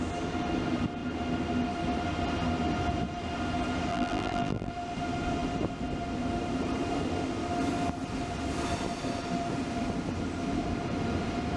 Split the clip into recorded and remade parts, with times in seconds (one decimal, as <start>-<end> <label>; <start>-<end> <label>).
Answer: 0.0-3.9 recorded; 3.9-4.7 remade; 4.7-11.6 recorded